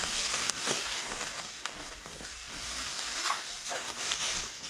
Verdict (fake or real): fake